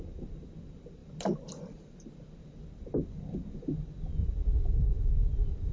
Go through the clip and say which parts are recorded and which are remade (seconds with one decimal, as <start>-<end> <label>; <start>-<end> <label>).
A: 0.0-5.7 recorded